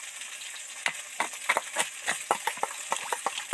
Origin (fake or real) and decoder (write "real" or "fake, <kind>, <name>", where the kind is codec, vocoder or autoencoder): real